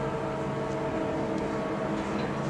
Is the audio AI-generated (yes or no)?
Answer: no